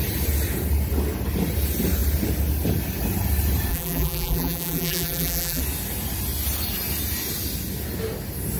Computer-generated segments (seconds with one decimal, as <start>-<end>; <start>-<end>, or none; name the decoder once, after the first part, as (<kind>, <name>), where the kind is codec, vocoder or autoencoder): 3.7-5.6 (vocoder, BigVGAN v2)